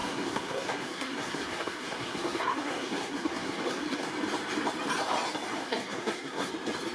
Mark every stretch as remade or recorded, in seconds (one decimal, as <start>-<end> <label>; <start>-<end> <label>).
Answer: 0.0-4.1 remade; 4.1-5.6 recorded; 5.6-6.5 remade; 6.5-6.9 recorded